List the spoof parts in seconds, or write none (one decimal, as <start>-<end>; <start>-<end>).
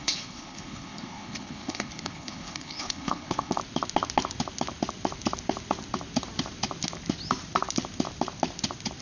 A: 0.0-3.6